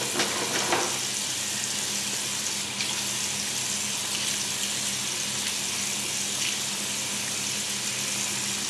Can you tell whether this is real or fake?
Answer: real